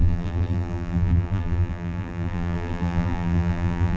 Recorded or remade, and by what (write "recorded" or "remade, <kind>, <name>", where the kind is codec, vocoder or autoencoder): remade, vocoder, BigVGAN v2